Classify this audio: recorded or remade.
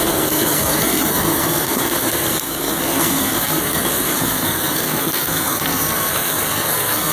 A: remade